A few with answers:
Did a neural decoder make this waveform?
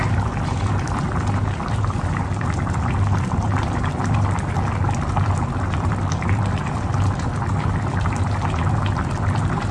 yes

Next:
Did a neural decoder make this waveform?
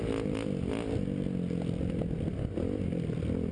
no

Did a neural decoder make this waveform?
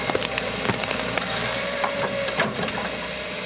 yes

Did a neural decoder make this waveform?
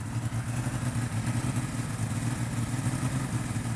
no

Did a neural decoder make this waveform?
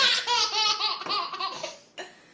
no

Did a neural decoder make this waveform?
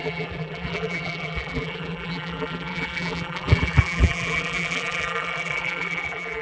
yes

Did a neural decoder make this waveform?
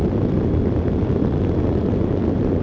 no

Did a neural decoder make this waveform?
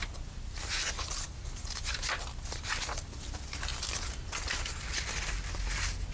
no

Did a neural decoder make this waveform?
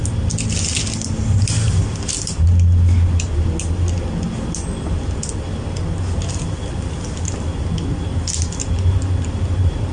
no